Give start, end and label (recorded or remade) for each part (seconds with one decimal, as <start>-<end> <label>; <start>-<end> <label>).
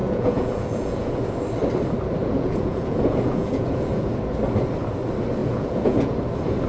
0.0-1.2 remade; 1.2-2.2 recorded; 2.2-4.1 remade; 4.1-5.4 recorded; 5.4-6.1 remade; 6.1-6.7 recorded